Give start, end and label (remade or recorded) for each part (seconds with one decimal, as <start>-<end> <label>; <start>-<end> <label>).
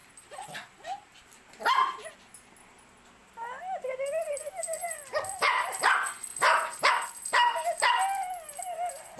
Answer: 0.0-1.4 remade; 1.4-6.3 recorded; 6.3-6.9 remade; 6.9-9.2 recorded